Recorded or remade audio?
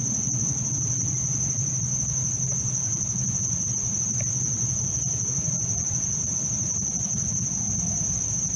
recorded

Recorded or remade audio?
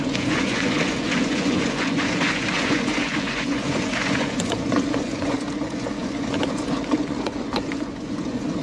remade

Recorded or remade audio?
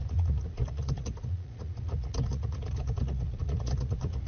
remade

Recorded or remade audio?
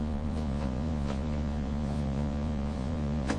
remade